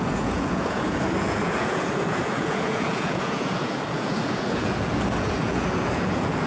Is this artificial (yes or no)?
yes